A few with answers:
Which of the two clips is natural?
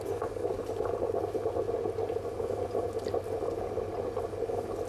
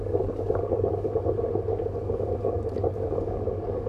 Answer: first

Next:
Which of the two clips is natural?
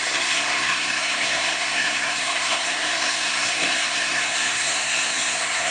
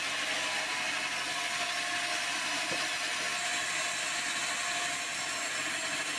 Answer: second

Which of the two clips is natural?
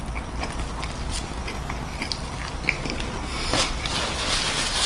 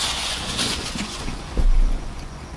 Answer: first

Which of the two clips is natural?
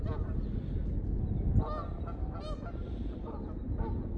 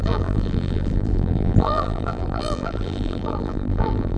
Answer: first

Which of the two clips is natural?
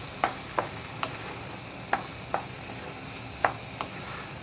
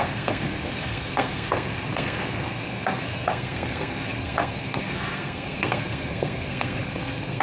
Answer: first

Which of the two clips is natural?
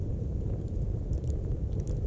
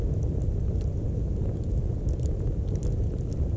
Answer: second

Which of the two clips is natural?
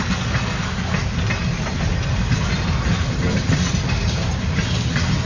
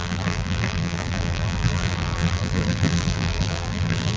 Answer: first